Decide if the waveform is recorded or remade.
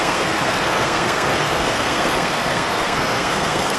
remade